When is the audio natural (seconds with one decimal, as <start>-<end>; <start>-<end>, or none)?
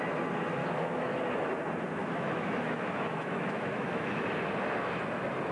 0.0-0.6; 1.2-2.0; 4.2-5.5